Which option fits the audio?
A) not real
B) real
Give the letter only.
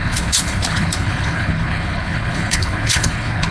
A